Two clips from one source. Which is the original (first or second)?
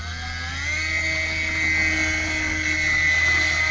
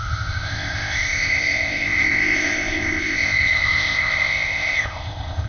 first